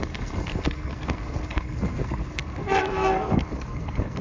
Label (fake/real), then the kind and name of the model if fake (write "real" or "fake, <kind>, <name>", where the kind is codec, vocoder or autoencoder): fake, codec, SNAC